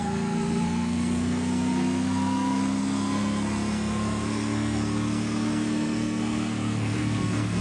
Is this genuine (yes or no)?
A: no